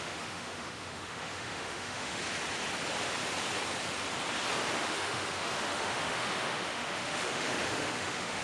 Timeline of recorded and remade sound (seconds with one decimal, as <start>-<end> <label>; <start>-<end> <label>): 0.0-2.2 remade; 2.2-4.8 recorded; 4.8-8.4 remade